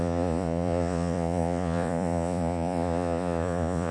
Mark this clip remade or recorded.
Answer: remade